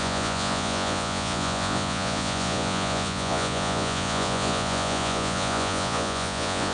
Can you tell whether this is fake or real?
fake